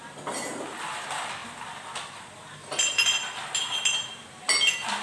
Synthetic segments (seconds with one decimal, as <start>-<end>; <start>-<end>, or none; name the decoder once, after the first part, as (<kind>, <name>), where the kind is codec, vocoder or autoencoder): none